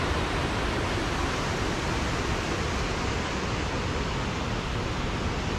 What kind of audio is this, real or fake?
real